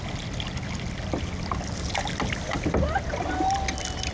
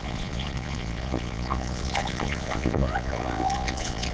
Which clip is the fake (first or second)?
second